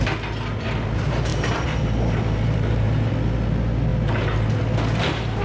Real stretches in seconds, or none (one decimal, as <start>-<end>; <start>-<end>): 0.0-1.3; 3.1-5.4